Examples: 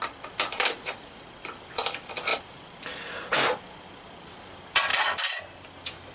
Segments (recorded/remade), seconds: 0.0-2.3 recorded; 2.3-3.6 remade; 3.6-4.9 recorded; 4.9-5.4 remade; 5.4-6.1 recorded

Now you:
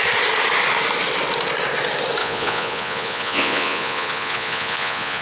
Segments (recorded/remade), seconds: 0.0-2.2 recorded; 2.2-5.2 remade

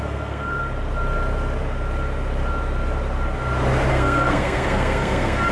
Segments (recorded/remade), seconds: 0.0-0.6 remade; 0.6-3.9 recorded; 3.9-5.5 remade